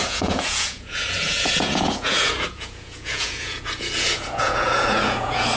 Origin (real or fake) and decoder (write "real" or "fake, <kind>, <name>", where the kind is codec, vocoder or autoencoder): fake, vocoder, Vocos